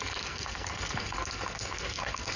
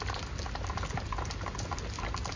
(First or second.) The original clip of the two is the second